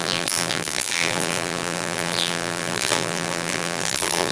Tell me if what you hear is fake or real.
fake